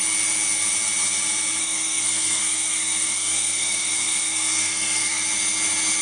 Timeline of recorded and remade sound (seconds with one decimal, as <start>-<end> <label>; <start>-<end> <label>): 0.0-1.6 recorded; 1.6-5.2 remade; 5.2-6.0 recorded